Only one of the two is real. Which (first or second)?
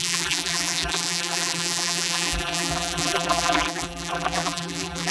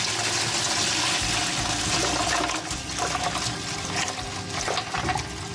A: second